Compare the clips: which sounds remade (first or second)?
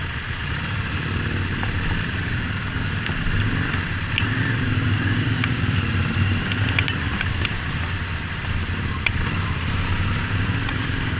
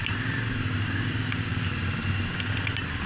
first